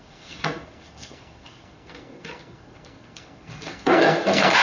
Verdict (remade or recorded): remade